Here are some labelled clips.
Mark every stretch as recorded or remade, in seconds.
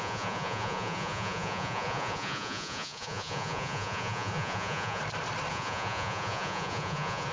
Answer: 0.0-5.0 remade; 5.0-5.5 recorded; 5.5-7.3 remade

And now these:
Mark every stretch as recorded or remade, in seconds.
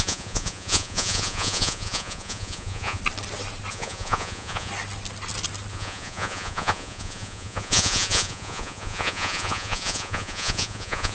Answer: 0.0-3.0 remade; 3.0-3.7 recorded; 3.7-4.7 remade; 4.7-5.7 recorded; 5.7-11.1 remade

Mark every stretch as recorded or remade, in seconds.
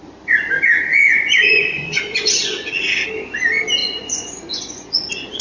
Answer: 0.0-0.9 recorded; 0.9-2.7 remade; 2.7-3.8 recorded; 3.8-5.4 remade